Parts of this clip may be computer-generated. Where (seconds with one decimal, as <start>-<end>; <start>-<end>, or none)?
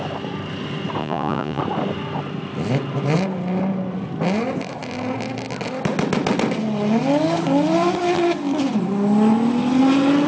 1.0-1.6